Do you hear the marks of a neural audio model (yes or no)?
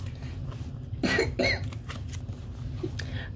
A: no